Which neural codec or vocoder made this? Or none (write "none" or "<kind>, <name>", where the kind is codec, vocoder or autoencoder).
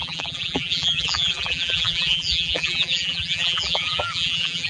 vocoder, BigVGAN v2